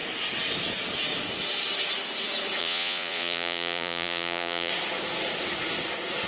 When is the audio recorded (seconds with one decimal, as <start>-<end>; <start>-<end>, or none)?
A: 0.0-2.6; 4.7-6.3